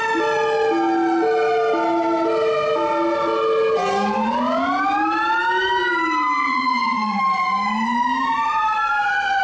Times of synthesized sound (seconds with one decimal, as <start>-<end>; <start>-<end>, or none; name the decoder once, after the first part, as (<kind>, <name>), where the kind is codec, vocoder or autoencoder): 6.4-7.2 (vocoder, Vocos)

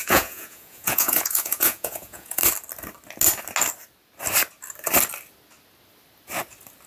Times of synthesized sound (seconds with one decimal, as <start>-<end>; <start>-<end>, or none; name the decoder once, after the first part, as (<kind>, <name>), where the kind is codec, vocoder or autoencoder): 0.0-2.4 (vocoder, Vocos)

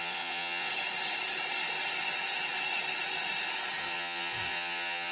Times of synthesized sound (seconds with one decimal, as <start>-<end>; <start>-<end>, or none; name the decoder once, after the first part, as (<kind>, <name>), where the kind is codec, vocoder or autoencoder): 0.0-0.7 (vocoder, Vocos); 3.8-5.1

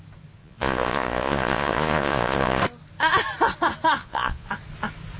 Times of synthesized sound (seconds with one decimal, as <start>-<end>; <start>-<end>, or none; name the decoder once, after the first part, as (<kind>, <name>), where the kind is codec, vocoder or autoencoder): 0.4-2.6 (vocoder, Vocos); 4.0-4.5

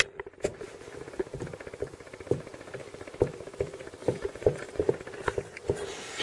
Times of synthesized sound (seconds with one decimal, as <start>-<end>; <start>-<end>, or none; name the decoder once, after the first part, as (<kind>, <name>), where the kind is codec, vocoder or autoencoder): 4.0-4.9 (vocoder, Vocos)

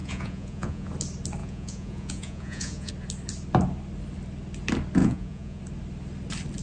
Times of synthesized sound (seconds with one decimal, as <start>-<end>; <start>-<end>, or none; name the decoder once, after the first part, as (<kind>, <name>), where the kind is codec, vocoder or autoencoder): 0.0-0.9 (vocoder, Vocos); 1.4-2.9; 5.0-5.6

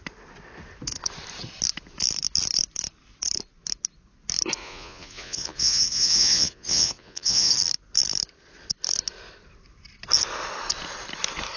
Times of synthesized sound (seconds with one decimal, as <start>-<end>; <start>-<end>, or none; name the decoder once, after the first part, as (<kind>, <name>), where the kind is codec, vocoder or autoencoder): 4.6-7.5 (vocoder, Vocos)

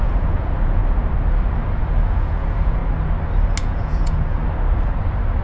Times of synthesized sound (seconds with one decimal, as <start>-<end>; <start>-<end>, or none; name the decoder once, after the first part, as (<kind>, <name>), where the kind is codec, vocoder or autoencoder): 0.0-0.8 (vocoder, Vocos); 2.1-2.8; 3.6-4.4